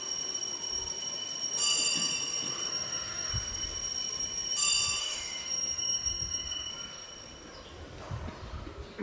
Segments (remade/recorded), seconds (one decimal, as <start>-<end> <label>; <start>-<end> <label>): 0.0-2.7 recorded; 2.7-3.3 remade; 3.3-5.0 recorded; 5.0-6.7 remade; 6.7-9.0 recorded